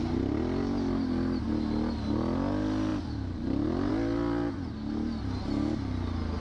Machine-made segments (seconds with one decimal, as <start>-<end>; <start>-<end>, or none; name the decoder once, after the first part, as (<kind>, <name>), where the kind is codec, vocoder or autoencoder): none